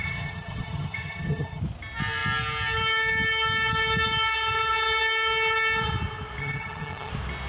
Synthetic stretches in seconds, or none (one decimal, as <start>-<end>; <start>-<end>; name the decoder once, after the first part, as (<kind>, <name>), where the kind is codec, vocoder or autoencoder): 0.0-1.6 (vocoder, HiFi-GAN); 6.4-7.1